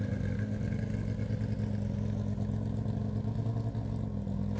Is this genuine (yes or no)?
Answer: yes